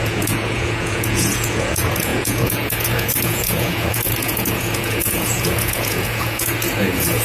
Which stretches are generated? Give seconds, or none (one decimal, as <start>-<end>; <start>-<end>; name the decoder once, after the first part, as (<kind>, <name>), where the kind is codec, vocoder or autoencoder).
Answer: 0.0-7.2 (vocoder, Vocos)